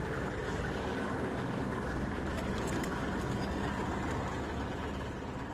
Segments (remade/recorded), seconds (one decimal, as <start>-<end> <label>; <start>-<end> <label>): 0.0-0.4 recorded; 0.4-3.7 remade; 3.7-5.5 recorded